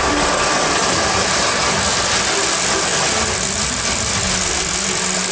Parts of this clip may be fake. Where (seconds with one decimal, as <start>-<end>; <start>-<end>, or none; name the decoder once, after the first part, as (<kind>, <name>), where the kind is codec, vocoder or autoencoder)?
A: none